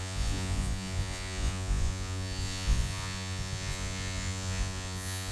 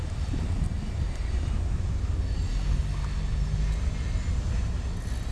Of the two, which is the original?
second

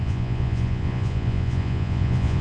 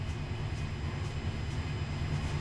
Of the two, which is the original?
second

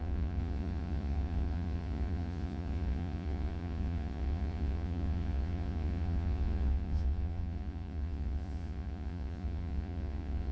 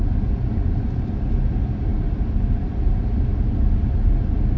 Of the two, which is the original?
second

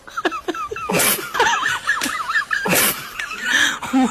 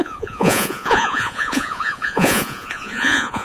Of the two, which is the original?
first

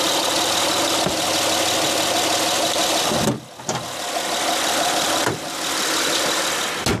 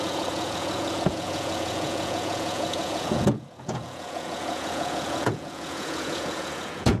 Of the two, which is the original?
first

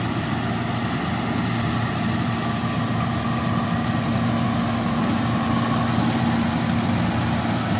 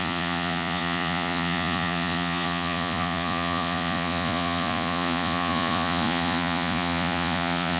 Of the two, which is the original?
first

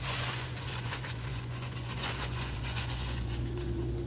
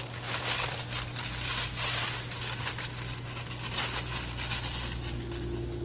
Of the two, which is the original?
second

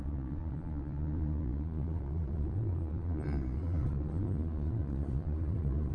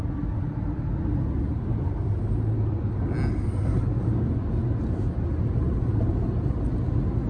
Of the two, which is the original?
second